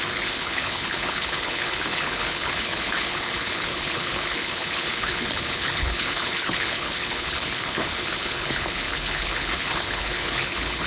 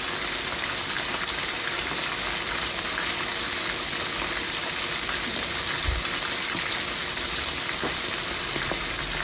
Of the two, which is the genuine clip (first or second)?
second